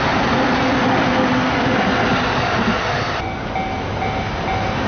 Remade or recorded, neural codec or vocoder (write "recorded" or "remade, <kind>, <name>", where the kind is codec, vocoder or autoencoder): recorded